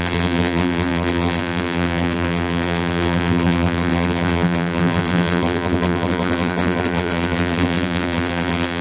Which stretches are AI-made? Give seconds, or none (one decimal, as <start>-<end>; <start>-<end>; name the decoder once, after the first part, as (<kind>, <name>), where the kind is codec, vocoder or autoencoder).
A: 0.0-8.8 (vocoder, BigVGAN v2)